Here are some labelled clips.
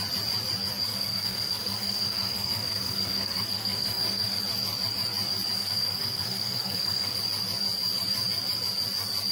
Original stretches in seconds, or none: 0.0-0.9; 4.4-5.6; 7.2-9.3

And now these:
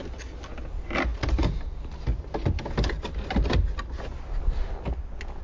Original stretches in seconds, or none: 0.0-5.4